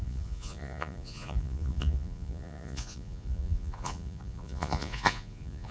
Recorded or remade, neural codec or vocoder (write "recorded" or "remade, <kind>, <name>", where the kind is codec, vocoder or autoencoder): remade, vocoder, Vocos